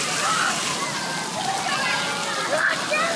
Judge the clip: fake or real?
real